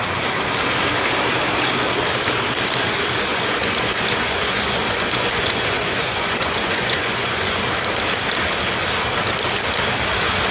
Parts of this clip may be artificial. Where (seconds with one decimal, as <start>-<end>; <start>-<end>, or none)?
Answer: 3.3-7.6